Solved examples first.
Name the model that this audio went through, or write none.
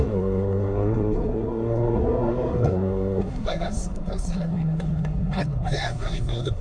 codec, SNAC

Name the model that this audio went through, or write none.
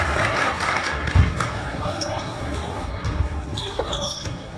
codec, SNAC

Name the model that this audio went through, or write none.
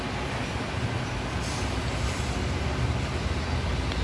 none